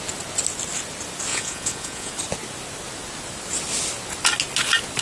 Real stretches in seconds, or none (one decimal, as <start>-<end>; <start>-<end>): 0.0-1.3; 2.1-5.0